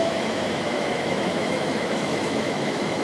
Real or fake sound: fake